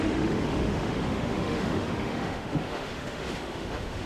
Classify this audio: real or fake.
fake